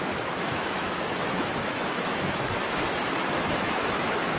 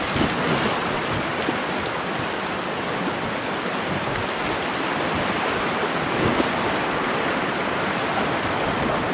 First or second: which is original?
second